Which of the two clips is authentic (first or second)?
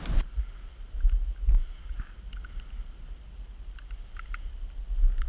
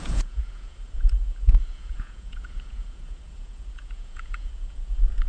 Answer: first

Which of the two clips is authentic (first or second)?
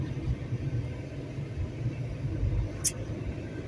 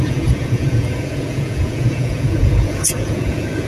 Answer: first